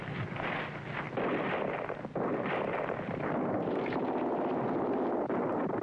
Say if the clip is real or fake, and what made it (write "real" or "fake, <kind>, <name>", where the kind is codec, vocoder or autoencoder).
real